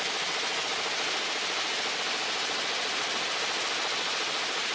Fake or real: real